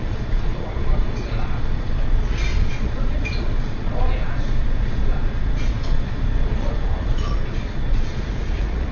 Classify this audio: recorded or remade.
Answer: remade